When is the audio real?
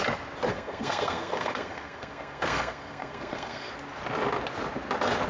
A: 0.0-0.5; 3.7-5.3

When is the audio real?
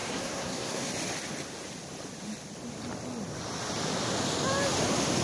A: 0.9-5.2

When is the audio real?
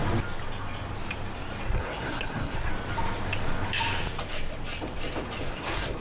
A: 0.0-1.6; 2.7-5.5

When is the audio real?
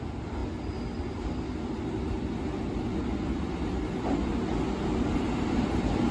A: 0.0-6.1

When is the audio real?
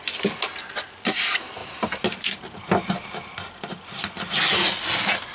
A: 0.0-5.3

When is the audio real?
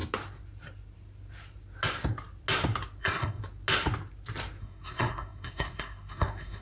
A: 0.0-3.0; 3.4-4.6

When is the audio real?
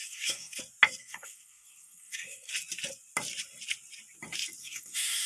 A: 0.6-1.0; 2.5-4.6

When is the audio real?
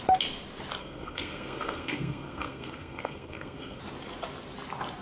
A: 0.0-0.8; 3.8-5.0